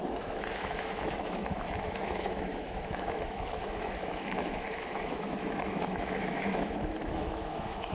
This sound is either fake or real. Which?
fake